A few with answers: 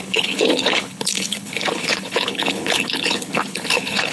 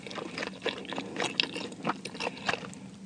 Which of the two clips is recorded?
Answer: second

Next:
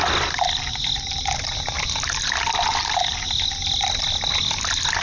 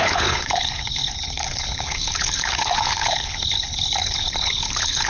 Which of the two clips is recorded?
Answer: first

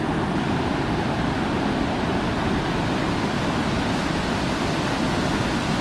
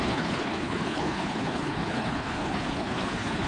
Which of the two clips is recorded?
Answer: first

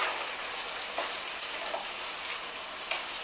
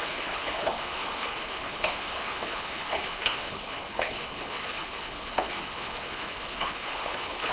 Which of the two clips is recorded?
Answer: first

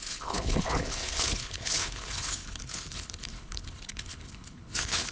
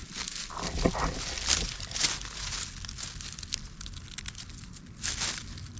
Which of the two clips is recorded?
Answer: second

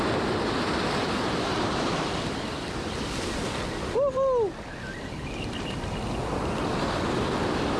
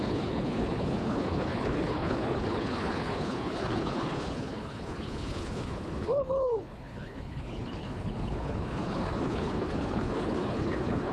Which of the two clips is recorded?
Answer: first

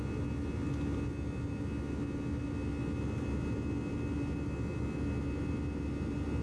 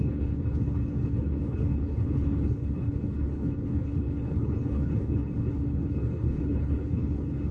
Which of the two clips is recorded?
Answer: first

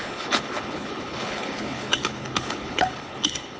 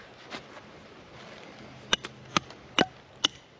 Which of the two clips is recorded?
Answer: second